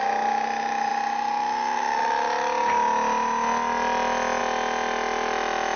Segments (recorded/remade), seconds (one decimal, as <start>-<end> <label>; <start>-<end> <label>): 0.0-5.8 recorded

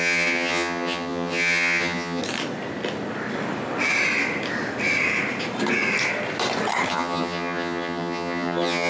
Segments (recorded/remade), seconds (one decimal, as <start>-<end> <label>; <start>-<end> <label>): 0.0-2.2 remade; 2.2-6.9 recorded; 6.9-8.9 remade

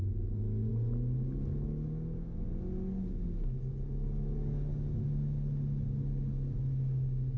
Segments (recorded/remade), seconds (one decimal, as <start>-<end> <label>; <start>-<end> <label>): 0.0-7.4 recorded

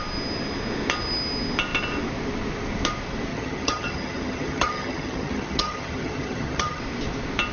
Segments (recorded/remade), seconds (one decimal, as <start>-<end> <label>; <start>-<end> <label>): 0.0-3.3 recorded; 3.3-6.8 remade; 6.8-7.5 recorded

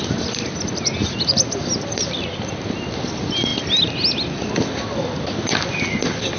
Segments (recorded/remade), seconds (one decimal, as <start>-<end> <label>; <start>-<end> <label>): 0.0-6.4 recorded

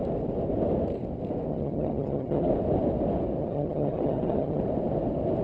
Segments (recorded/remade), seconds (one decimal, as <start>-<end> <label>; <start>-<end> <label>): 0.0-1.5 recorded; 1.5-2.5 remade; 2.5-3.4 recorded; 3.4-4.6 remade; 4.6-5.4 recorded

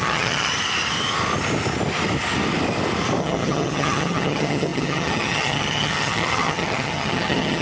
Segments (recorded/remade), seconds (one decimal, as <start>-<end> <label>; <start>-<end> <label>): 0.0-0.5 remade; 0.5-3.2 recorded; 3.2-7.6 remade